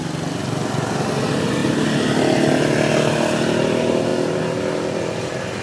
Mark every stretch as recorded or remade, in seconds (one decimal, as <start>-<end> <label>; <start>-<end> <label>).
0.0-5.6 recorded